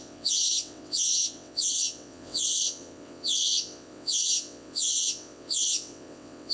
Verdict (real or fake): fake